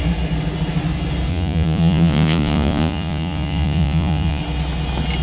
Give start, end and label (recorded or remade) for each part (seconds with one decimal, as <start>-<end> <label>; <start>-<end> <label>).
0.0-1.3 recorded; 1.3-4.4 remade; 4.4-5.2 recorded